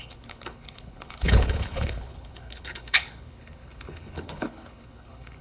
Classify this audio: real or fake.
fake